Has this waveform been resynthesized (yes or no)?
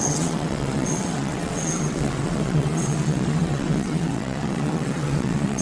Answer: yes